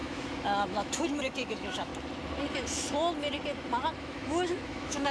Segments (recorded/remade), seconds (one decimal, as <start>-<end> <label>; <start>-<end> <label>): 0.0-1.9 remade; 1.9-4.0 recorded; 4.0-5.1 remade